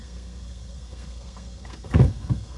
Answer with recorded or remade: remade